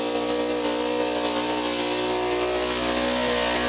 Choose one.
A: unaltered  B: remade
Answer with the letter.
A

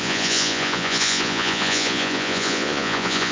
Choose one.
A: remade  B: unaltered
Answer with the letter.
A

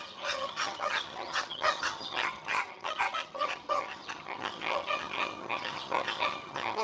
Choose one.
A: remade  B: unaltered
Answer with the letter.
A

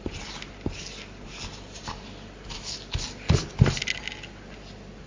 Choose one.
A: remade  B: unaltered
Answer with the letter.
B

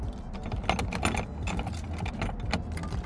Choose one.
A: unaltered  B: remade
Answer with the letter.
A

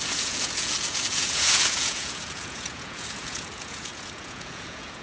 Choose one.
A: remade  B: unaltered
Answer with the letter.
A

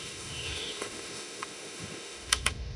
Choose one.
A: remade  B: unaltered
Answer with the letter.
A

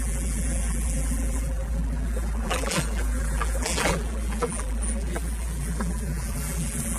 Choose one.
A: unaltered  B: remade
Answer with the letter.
B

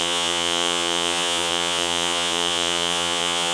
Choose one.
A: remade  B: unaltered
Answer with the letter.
A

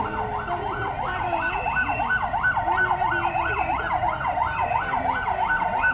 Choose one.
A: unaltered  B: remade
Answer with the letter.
A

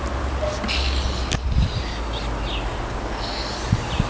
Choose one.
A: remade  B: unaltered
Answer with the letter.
B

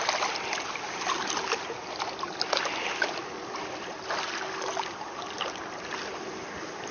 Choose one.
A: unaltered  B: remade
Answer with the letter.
A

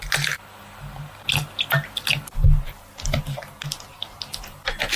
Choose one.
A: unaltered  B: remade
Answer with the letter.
A